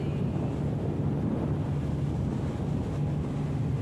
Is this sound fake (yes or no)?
no